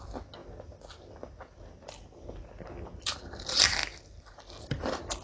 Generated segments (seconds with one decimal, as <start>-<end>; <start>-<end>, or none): none